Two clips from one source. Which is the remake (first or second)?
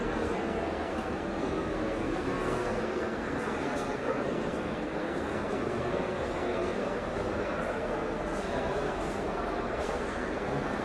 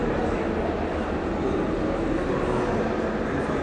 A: first